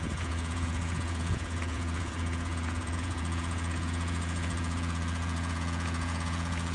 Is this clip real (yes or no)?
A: no